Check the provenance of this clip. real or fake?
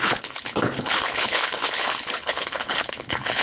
fake